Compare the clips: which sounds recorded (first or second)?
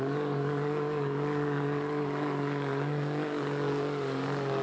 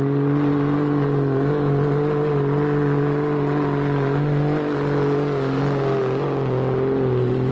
second